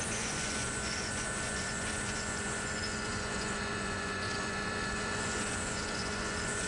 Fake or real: fake